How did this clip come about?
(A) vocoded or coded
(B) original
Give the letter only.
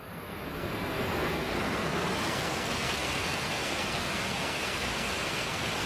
A